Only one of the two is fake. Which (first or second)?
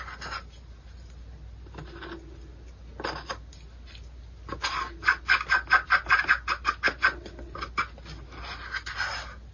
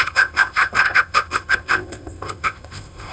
second